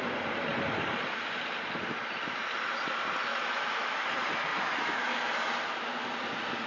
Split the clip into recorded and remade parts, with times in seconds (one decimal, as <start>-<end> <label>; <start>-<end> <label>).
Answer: 0.0-3.3 recorded; 3.3-4.1 remade; 4.1-4.5 recorded; 4.5-5.1 remade; 5.1-6.7 recorded

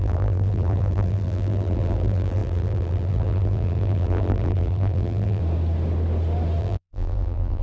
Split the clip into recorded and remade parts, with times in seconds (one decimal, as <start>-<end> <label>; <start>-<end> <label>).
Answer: 0.0-5.4 remade; 5.4-6.6 recorded; 6.6-7.6 remade

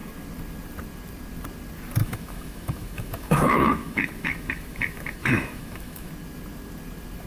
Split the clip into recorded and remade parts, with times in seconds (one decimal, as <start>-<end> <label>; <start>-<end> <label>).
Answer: 0.0-2.0 recorded; 2.0-6.1 remade; 6.1-7.3 recorded

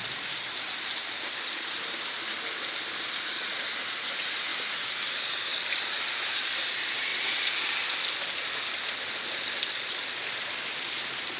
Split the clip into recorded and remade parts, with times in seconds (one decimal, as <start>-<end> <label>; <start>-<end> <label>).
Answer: 0.0-11.4 recorded

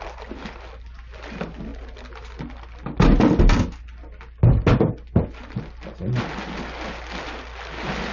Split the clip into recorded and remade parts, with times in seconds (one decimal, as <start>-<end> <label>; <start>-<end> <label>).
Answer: 0.0-8.1 recorded

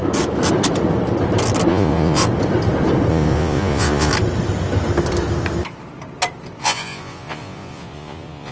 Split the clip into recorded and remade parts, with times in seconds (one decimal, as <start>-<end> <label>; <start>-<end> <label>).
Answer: 0.0-1.7 recorded; 1.7-2.2 remade; 2.2-3.1 recorded; 3.1-4.1 remade; 4.1-6.6 recorded; 6.6-8.5 remade

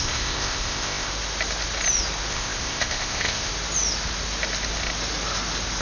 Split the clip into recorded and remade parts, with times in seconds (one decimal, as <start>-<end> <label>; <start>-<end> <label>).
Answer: 0.0-1.1 remade; 1.1-2.3 recorded; 2.3-3.5 remade; 3.5-5.8 recorded